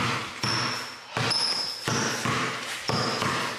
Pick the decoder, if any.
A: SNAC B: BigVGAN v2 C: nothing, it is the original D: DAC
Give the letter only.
C